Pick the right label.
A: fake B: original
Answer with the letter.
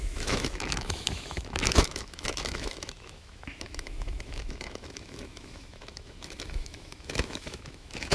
A